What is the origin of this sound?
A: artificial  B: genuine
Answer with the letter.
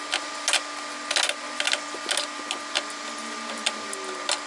B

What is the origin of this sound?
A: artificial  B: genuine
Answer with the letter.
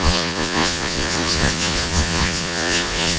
A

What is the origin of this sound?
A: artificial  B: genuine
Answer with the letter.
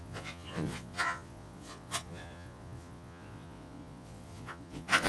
A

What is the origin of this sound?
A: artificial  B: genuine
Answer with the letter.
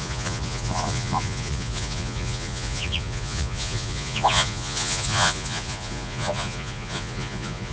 A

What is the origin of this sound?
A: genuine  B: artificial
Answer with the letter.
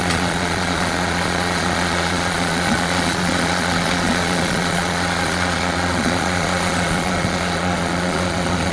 B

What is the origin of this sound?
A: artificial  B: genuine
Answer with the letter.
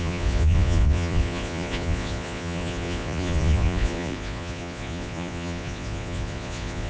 A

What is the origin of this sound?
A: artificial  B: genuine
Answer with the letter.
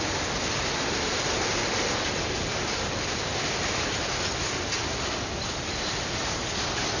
B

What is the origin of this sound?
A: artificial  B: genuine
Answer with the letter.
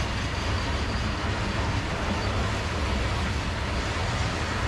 B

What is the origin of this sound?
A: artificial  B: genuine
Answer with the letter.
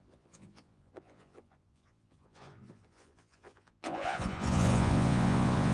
A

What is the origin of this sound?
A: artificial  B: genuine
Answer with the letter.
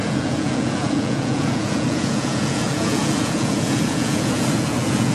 A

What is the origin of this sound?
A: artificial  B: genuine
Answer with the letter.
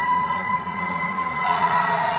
A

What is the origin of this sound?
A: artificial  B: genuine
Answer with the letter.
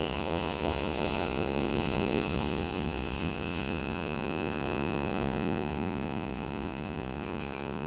A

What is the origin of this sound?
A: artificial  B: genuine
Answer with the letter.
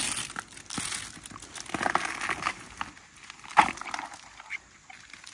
B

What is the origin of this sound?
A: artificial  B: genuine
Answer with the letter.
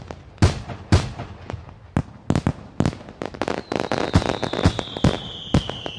B